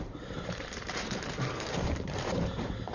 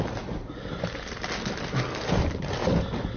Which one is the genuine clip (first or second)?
second